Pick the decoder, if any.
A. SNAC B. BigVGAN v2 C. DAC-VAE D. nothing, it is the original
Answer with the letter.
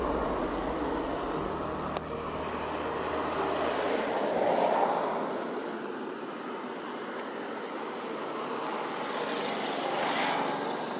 D